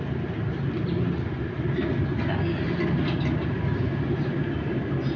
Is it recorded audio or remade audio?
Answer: recorded